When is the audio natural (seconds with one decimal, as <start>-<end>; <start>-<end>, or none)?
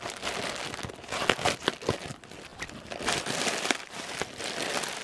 0.0-2.5